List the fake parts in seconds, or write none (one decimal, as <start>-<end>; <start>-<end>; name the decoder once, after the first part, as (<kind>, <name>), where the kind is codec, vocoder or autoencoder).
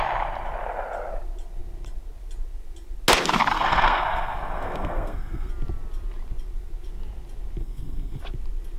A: 3.5-5.5 (codec, SNAC); 7.6-8.2